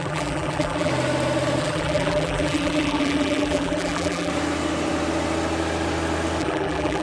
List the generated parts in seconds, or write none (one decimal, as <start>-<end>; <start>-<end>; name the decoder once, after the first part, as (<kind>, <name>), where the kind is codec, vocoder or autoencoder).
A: 0.0-0.9 (vocoder, BigVGAN v2); 1.6-4.3; 6.4-7.0